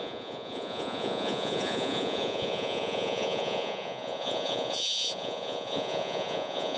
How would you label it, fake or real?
fake